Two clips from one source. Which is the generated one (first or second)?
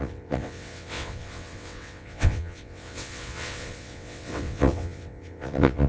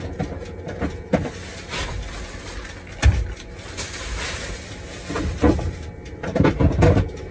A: first